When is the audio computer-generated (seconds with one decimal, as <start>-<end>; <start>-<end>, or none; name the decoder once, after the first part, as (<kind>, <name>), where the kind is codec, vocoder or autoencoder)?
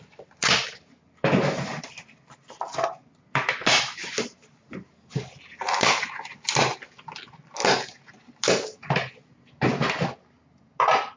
none